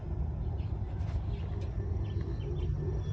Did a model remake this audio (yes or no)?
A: no